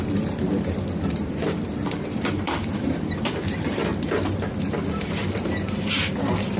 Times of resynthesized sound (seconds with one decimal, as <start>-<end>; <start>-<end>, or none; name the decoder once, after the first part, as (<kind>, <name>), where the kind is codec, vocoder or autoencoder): 0.0-3.9 (vocoder, BigVGAN v2); 4.6-6.6